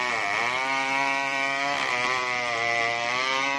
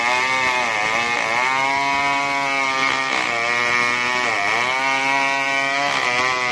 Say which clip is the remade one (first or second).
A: first